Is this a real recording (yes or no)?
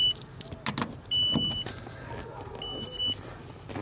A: yes